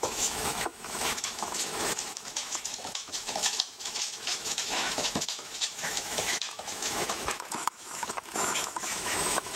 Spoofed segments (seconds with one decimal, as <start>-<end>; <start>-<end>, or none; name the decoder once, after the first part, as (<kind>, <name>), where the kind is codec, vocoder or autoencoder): 0.0-9.6 (autoencoder, DAC-VAE)